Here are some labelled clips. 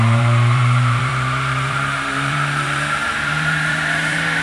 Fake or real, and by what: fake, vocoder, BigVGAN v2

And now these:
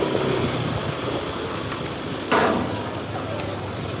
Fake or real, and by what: real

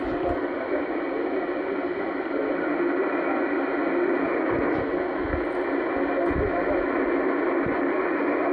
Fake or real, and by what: real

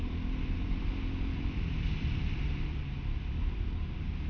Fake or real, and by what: real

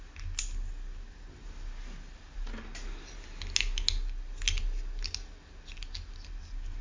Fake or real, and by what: real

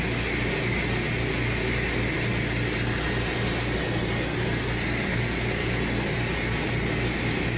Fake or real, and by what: real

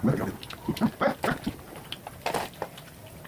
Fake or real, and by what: real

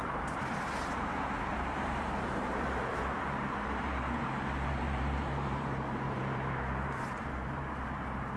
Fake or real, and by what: fake, vocoder, BigVGAN v2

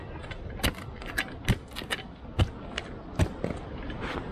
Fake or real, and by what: real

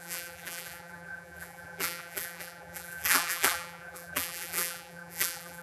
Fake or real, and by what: fake, vocoder, BigVGAN v2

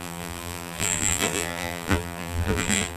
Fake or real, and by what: fake, vocoder, BigVGAN v2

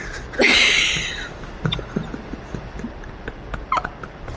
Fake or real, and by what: real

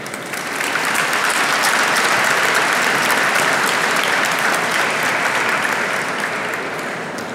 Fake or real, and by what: fake, vocoder, BigVGAN v2